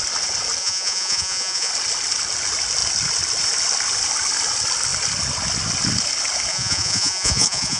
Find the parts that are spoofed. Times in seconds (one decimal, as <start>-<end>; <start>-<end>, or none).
0.6-1.7; 6.5-7.8